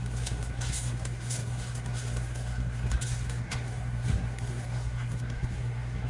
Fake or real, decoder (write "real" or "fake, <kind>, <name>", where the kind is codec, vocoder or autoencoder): fake, codec, SNAC